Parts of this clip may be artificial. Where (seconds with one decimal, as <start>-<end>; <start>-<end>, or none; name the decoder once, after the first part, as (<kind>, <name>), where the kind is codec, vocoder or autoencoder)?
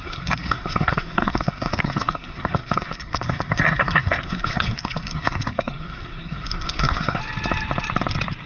0.0-7.2 (codec, SNAC)